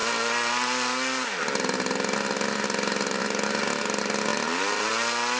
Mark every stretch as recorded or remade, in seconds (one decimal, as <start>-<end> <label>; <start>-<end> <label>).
0.0-5.4 recorded